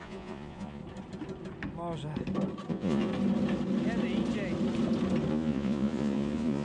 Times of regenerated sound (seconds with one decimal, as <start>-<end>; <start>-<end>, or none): 0.0-0.8; 2.7-3.1; 5.3-6.6